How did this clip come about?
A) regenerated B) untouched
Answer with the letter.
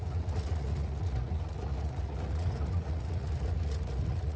A